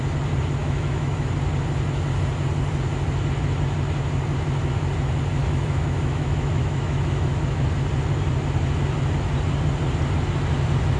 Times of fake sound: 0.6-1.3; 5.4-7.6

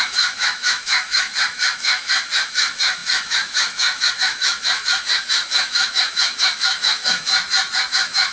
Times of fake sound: 0.0-7.3; 7.9-8.3

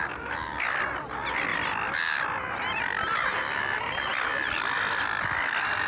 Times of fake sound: none

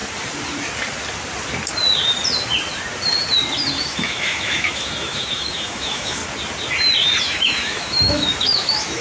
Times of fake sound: 3.8-6.2; 7.2-9.0

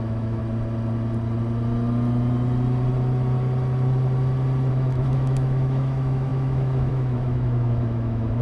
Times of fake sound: 0.0-0.4; 4.7-8.4

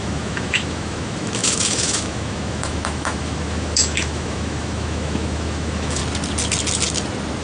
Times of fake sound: 0.0-6.0

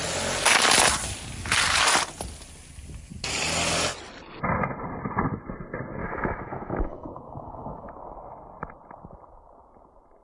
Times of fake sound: 6.0-7.9